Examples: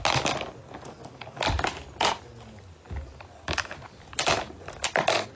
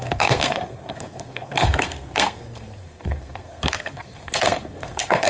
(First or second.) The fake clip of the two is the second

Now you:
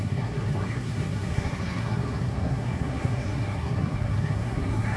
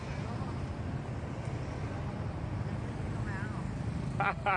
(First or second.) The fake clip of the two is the first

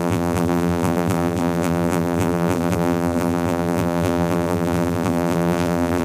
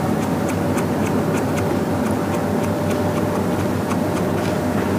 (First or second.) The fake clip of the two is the first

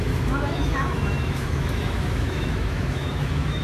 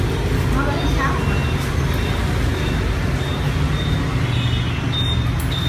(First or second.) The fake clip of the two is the first